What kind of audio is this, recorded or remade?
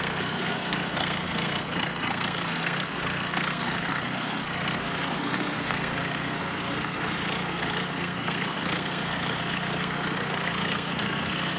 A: remade